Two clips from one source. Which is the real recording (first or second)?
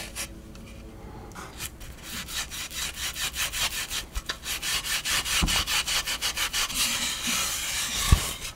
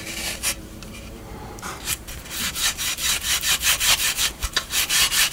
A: first